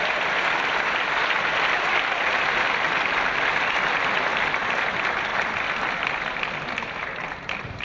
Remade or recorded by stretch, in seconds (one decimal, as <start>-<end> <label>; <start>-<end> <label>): 0.0-7.8 recorded